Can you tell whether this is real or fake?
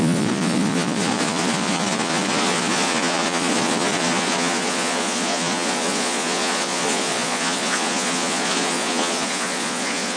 fake